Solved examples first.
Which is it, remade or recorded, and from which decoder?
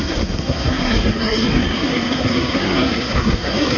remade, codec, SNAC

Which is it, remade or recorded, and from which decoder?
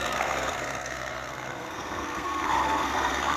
remade, codec, SNAC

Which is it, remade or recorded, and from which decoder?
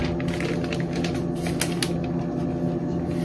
recorded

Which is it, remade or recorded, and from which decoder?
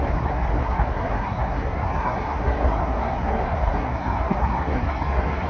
remade, codec, SNAC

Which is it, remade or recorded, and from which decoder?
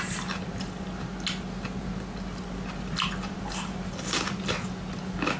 recorded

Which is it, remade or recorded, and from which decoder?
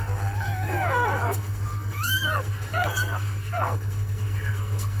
remade, codec, SNAC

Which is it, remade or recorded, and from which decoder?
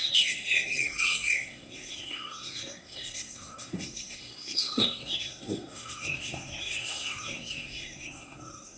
remade, codec, SNAC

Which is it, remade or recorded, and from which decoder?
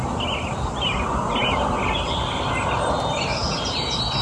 recorded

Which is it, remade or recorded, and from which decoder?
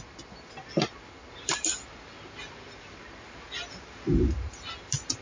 recorded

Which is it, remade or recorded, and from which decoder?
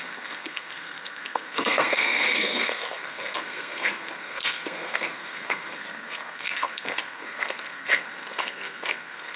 remade, codec, SNAC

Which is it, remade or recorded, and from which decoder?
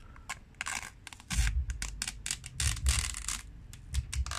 recorded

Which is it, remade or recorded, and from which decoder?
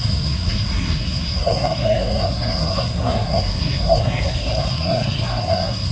remade, codec, SNAC